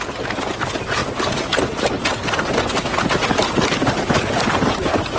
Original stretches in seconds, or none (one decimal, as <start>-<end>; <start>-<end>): 0.0-5.2